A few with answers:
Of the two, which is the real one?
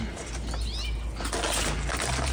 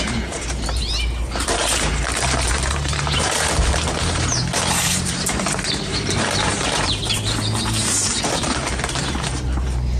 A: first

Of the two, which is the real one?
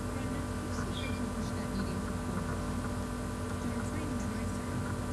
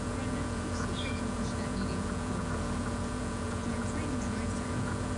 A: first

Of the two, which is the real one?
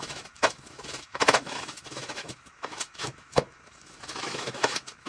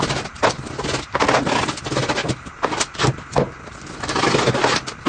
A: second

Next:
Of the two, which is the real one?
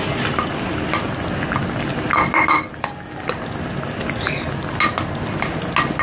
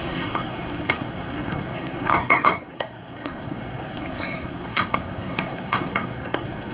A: first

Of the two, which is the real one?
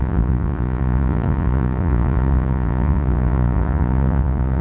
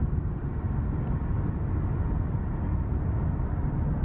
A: second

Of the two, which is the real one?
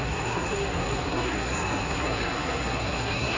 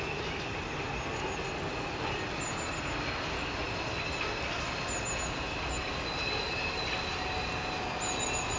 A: second